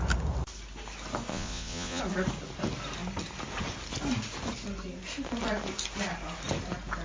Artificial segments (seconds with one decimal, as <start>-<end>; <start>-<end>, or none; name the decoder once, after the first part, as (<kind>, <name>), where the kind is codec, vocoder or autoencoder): 1.3-2.0 (vocoder, Vocos)